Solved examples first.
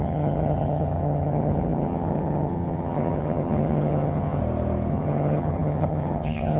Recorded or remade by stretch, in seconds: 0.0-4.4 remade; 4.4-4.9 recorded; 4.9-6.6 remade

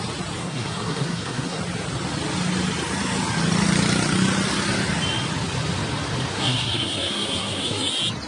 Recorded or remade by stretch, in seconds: 0.0-0.4 recorded; 0.4-1.6 remade; 1.6-6.3 recorded; 6.3-7.9 remade; 7.9-8.3 recorded